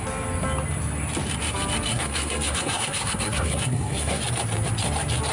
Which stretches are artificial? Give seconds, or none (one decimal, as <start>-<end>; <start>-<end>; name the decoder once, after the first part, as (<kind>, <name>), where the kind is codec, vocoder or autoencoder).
1.9-4.2 (codec, SNAC)

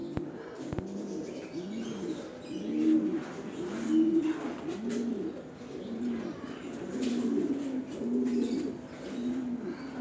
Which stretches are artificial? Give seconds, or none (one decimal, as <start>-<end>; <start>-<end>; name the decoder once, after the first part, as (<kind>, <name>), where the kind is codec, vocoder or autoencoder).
none

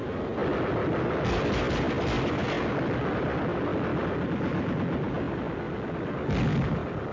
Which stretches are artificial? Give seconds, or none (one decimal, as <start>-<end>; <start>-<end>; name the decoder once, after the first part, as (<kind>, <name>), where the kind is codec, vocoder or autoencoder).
none